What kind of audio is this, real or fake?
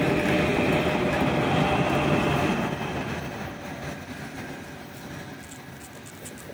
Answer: real